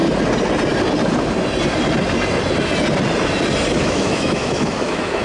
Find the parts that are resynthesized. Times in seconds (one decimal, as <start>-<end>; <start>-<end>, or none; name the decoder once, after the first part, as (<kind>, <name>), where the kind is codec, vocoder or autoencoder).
3.8-5.2 (autoencoder, DAC-VAE)